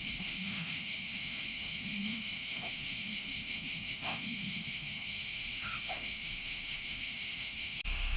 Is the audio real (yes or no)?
no